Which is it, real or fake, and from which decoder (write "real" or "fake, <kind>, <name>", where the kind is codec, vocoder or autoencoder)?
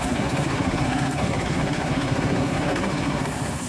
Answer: fake, codec, SNAC